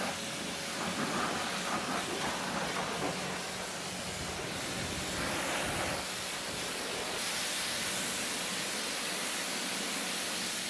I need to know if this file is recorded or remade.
recorded